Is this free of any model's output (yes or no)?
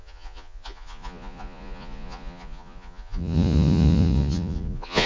no